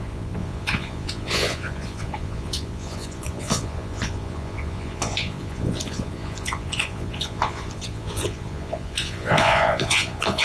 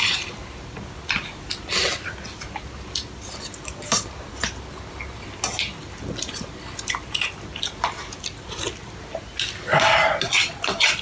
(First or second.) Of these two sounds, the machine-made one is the first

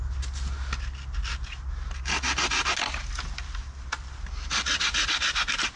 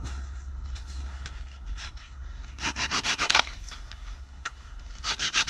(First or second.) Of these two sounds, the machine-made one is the second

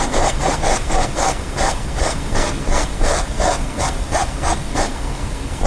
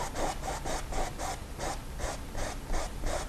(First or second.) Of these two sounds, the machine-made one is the first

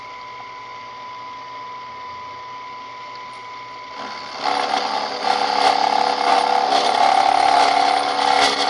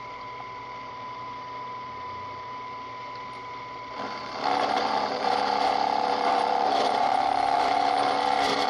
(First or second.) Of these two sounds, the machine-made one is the second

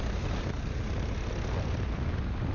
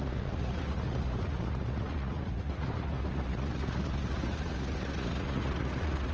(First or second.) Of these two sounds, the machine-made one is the second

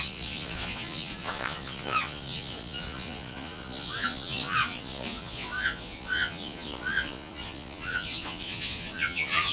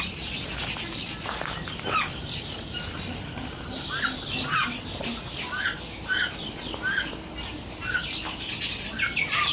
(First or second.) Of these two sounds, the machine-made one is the first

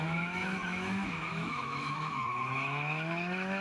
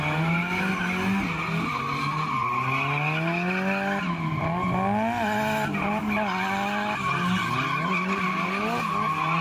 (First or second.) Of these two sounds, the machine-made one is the first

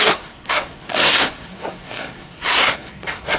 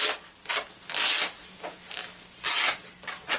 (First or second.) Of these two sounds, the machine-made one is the first